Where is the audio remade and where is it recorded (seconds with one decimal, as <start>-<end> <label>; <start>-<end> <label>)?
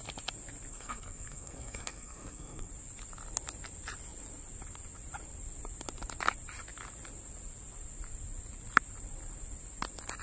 0.0-0.7 recorded; 0.7-2.7 remade; 2.7-10.2 recorded